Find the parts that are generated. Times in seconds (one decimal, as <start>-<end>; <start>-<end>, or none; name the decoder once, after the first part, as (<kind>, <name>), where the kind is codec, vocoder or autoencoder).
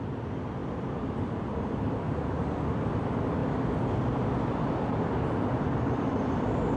0.0-0.6 (vocoder, BigVGAN v2); 1.2-3.4; 5.6-6.8